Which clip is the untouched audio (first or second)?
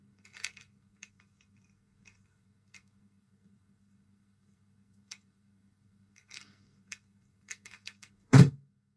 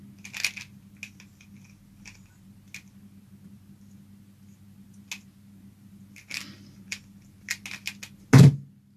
second